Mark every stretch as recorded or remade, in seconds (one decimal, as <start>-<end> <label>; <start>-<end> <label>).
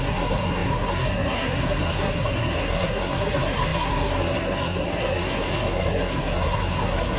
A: 0.0-7.2 remade